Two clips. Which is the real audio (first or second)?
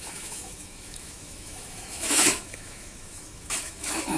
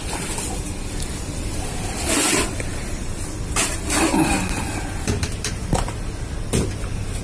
second